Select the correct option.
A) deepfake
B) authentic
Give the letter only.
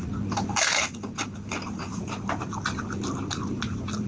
B